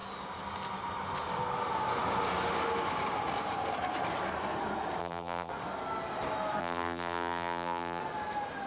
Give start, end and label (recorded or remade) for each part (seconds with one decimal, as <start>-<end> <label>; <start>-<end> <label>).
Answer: 0.0-5.0 recorded; 5.0-5.5 remade; 5.5-6.6 recorded; 6.6-8.0 remade; 8.0-8.7 recorded

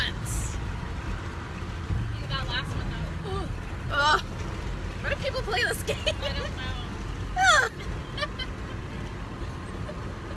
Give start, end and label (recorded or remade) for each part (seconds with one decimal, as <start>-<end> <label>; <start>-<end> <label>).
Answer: 0.0-10.4 recorded

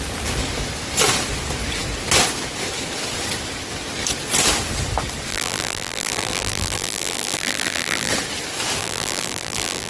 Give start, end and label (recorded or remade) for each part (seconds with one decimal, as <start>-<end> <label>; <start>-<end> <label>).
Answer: 0.0-5.3 recorded; 5.3-8.1 remade; 8.1-8.8 recorded; 8.8-9.9 remade

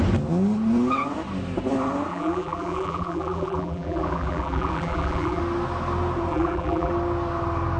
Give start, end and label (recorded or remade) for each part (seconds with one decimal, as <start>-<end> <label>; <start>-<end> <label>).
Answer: 0.0-2.1 recorded; 2.1-5.4 remade; 5.4-6.3 recorded; 6.3-6.9 remade; 6.9-7.8 recorded

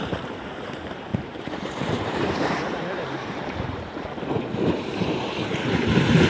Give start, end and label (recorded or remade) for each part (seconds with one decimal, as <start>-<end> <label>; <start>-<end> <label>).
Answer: 0.0-6.3 remade